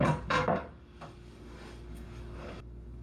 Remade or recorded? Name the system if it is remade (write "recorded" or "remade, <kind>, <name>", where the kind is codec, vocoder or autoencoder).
remade, codec, DAC